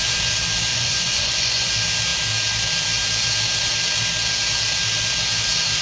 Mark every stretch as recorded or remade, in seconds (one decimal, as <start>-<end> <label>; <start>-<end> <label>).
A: 0.0-0.7 recorded; 0.7-1.7 remade; 1.7-5.8 recorded